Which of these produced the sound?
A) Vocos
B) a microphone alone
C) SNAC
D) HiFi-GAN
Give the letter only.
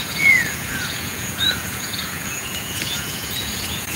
A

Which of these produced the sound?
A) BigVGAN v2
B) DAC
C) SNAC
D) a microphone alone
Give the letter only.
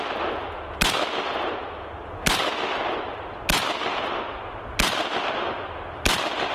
D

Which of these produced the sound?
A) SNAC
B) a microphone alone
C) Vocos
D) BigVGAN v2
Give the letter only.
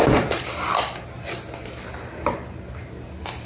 B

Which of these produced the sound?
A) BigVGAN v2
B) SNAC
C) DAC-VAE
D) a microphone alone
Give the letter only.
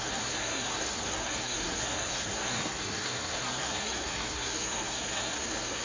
B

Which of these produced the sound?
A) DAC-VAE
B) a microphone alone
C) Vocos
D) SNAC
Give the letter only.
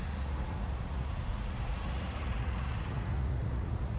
C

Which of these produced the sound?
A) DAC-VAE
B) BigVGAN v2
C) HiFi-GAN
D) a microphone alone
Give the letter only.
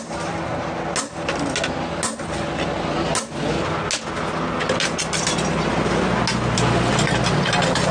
D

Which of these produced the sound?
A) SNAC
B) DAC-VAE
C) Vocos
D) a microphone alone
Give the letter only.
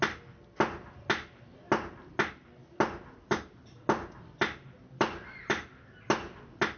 D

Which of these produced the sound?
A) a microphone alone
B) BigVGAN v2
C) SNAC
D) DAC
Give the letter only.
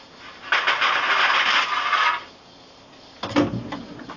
A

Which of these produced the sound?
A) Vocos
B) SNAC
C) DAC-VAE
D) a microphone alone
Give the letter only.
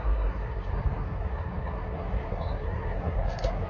B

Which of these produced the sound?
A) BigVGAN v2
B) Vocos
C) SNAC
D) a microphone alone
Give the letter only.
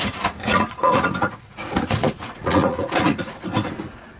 B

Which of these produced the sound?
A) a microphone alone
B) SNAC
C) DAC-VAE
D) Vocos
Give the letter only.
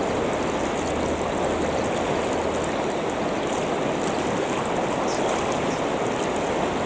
A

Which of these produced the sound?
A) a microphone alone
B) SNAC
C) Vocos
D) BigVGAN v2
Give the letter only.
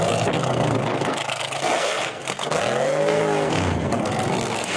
B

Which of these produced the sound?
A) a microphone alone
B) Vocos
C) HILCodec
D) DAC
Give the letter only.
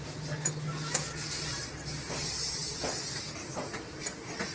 A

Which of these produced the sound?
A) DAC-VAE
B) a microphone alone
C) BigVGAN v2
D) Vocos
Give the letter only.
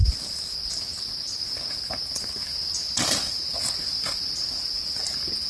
B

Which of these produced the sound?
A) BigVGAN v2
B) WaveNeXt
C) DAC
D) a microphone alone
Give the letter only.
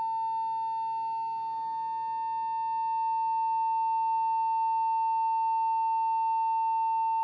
D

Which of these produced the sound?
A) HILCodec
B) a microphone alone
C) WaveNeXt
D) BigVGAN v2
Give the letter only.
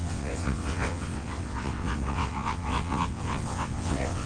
C